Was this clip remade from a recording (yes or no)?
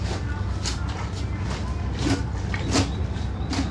no